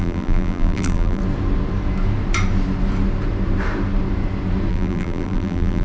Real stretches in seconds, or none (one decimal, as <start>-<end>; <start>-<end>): 1.2-4.7